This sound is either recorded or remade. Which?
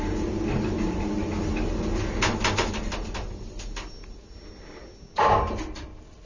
recorded